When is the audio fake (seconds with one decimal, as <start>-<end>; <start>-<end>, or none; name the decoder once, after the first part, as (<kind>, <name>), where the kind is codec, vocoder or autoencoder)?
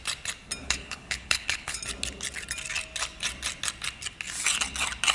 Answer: 0.6-1.8 (codec, HILCodec)